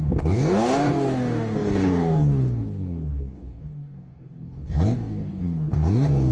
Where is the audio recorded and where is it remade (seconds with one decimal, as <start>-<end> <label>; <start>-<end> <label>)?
0.0-6.3 remade